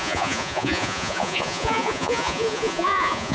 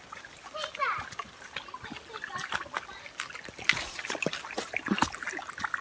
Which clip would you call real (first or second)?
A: second